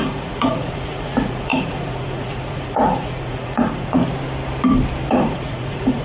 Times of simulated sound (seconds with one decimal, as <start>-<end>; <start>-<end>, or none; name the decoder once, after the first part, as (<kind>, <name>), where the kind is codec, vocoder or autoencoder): 0.0-4.0 (vocoder, Vocos); 5.1-6.0

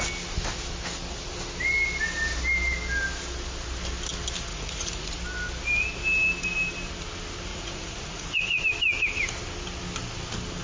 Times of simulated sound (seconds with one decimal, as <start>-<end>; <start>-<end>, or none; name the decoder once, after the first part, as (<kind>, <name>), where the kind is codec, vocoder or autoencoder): 4.5-5.1 (vocoder, Vocos); 7.5-8.6